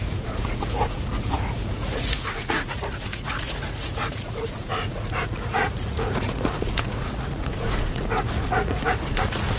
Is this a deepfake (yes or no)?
yes